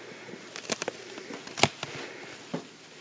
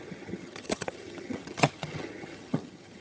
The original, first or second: first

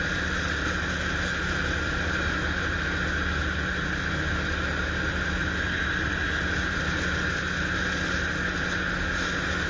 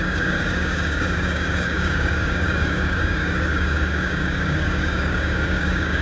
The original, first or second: first